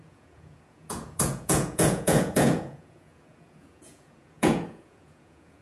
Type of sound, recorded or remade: remade